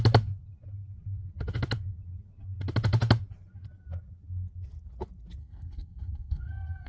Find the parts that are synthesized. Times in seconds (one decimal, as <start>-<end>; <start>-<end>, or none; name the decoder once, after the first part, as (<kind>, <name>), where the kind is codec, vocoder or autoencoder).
5.4-6.9 (codec, SNAC)